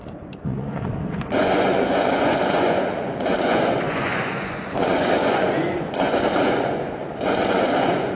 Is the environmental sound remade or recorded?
remade